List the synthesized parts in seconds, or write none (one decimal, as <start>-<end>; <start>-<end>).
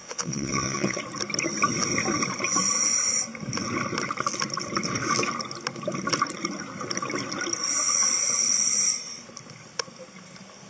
0.0-1.0